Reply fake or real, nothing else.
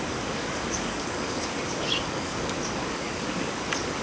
fake